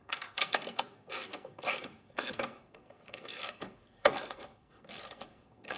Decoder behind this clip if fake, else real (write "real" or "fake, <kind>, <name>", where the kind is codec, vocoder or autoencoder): fake, codec, SNAC